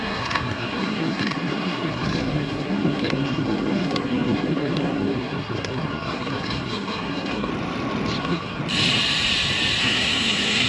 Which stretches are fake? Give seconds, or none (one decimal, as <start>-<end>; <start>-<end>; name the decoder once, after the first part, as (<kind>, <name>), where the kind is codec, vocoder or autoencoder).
0.0-7.5 (codec, SNAC); 8.2-8.6; 9.8-10.7